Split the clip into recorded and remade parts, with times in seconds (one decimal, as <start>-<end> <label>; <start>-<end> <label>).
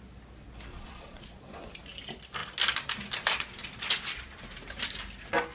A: 0.0-0.7 recorded; 0.7-1.6 remade; 1.6-5.5 recorded